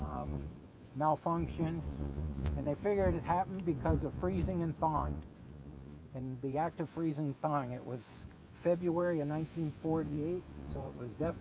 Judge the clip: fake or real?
fake